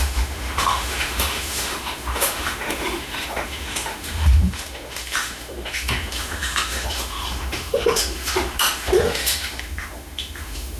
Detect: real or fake fake